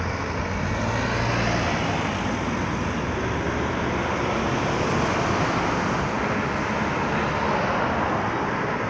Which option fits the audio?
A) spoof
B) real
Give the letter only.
B